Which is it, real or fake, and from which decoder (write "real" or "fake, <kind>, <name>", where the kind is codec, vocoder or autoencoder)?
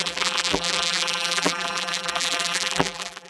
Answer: fake, vocoder, BigVGAN v2